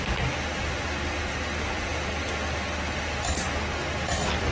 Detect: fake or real real